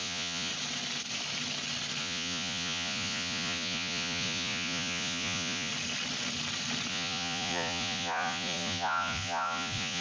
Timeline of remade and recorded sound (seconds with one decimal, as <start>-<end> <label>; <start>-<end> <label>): 0.0-0.5 remade; 0.5-2.0 recorded; 2.0-5.7 remade; 5.7-6.9 recorded; 6.9-10.0 remade